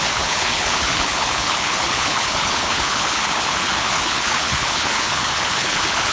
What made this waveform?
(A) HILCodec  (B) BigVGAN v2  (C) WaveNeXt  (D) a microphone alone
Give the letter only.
A